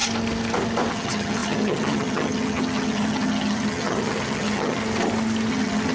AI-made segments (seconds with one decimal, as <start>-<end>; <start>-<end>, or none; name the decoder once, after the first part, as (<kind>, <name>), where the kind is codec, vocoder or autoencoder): 0.9-4.8 (vocoder, HiFi-GAN); 5.5-5.9